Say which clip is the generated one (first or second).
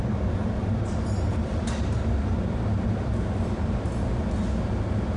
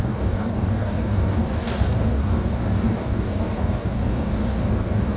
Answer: second